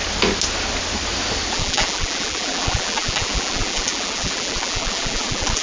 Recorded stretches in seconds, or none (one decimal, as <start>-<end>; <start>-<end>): 0.0-1.5